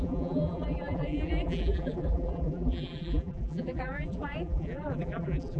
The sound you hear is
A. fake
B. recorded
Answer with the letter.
A